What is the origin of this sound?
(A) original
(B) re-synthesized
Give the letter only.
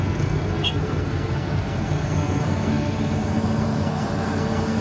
B